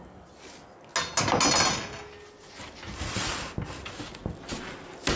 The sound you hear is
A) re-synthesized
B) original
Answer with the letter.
B